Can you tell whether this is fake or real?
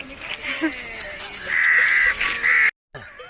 real